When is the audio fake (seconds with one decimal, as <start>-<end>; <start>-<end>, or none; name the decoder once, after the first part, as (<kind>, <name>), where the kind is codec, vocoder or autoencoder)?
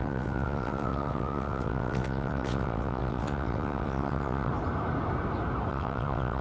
0.0-4.5 (vocoder, WaveNeXt); 5.7-6.4